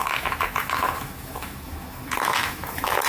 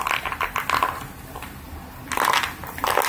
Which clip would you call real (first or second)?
second